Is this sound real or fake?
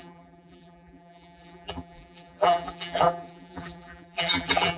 fake